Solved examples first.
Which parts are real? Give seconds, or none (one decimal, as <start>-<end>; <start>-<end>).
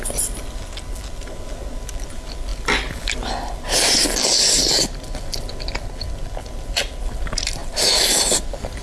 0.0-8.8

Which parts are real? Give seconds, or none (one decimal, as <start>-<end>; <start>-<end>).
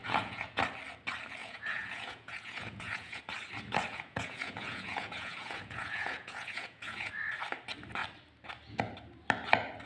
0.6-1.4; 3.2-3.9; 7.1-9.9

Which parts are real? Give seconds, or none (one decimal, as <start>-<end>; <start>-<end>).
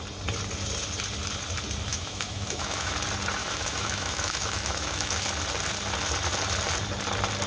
0.0-1.9; 2.9-3.4; 5.2-7.5